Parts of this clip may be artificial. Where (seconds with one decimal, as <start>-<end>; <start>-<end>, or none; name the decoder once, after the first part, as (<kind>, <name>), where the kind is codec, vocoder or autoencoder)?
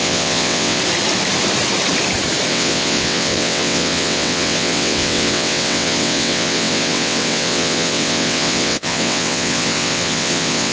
0.0-0.8 (vocoder, WaveNeXt); 2.5-10.7